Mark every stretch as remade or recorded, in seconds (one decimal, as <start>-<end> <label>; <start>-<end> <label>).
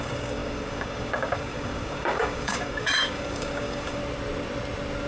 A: 0.0-4.0 remade; 4.0-5.1 recorded